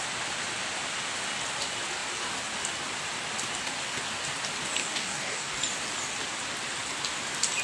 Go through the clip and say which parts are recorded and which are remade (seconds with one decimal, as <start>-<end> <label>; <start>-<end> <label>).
0.0-4.8 recorded; 4.8-5.6 remade; 5.6-7.6 recorded